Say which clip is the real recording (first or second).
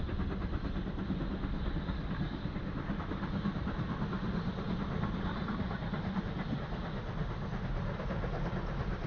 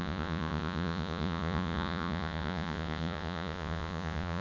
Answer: first